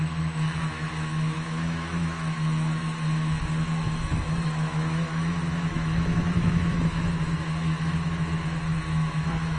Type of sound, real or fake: fake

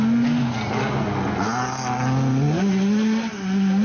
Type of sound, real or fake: real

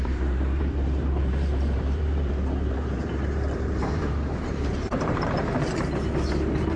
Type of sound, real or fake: fake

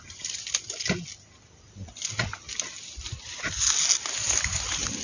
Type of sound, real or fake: real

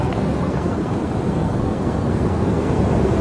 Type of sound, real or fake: fake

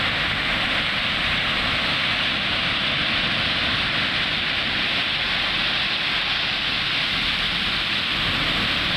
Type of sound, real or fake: real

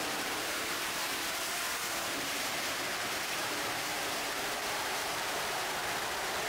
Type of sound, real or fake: fake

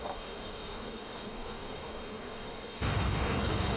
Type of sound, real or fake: fake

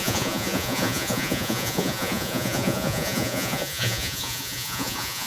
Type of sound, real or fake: fake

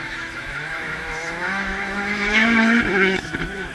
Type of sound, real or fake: fake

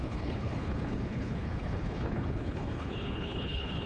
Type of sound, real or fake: fake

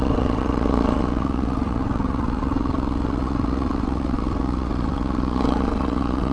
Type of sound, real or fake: fake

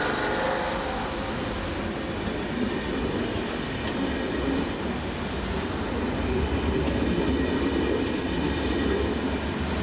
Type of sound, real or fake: real